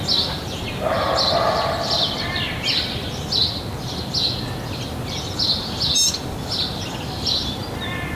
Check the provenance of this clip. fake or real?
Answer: real